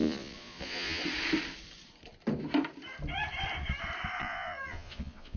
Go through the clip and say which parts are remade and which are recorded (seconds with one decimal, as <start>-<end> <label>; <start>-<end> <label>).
0.0-1.0 remade; 1.0-4.2 recorded; 4.2-5.4 remade